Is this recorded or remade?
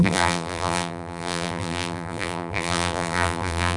remade